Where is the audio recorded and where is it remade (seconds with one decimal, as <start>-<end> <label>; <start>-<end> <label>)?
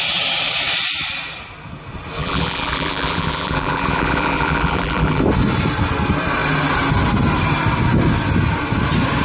0.0-2.2 recorded; 2.2-5.2 remade; 5.2-9.2 recorded